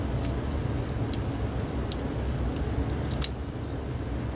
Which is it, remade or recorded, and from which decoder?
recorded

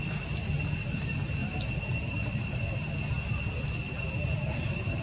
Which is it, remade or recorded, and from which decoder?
recorded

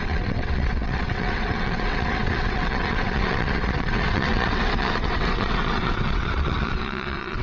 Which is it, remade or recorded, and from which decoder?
remade, vocoder, WaveNeXt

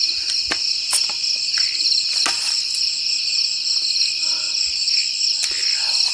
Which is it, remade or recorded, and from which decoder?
recorded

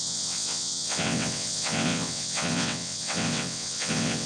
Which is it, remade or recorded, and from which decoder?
remade, vocoder, WaveNeXt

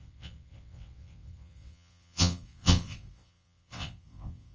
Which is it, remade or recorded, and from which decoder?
remade, vocoder, WaveNeXt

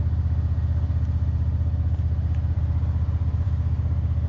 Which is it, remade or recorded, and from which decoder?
recorded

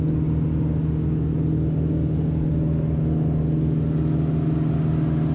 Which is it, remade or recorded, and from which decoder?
recorded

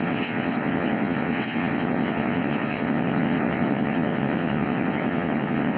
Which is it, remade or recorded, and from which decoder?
remade, vocoder, WaveNeXt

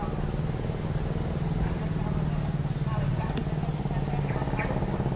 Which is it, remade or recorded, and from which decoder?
recorded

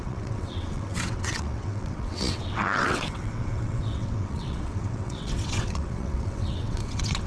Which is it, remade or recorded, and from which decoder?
remade, vocoder, WaveNeXt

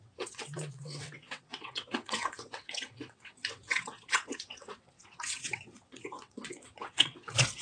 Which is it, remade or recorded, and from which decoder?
remade, vocoder, WaveNeXt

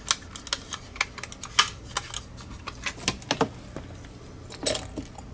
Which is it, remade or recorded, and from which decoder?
recorded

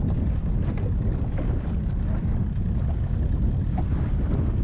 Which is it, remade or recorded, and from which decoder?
recorded